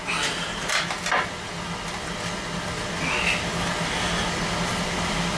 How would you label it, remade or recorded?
recorded